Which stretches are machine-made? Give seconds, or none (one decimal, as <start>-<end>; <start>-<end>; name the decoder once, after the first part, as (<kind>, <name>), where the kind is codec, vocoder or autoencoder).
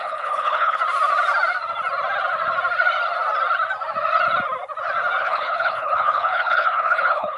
0.0-0.8 (codec, HILCodec); 5.2-7.4